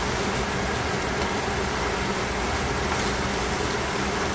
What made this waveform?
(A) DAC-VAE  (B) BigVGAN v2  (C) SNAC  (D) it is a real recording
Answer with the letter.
D